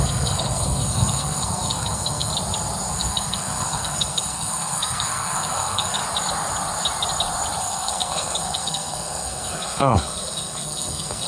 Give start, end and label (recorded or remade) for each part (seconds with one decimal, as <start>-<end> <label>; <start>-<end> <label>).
0.0-2.3 remade; 2.3-2.9 recorded; 2.9-6.0 remade; 6.0-7.6 recorded; 7.6-11.3 remade